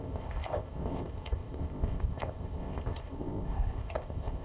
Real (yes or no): no